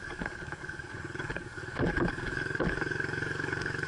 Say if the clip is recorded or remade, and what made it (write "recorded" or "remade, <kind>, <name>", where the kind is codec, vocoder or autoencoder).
remade, codec, DAC